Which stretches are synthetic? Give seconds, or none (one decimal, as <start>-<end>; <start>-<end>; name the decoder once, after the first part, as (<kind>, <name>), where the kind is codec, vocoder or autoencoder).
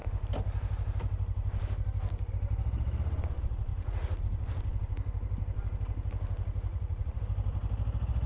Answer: 3.7-4.2 (vocoder, Vocos); 6.7-7.2